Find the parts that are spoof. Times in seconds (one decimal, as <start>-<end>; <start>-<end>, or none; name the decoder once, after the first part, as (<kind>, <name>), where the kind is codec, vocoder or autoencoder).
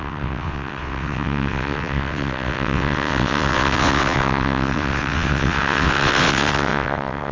0.0-7.3 (vocoder, WaveNeXt)